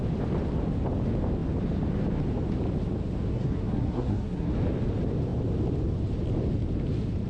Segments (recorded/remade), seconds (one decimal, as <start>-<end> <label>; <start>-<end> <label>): 0.0-3.3 recorded; 3.3-4.5 remade; 4.5-7.3 recorded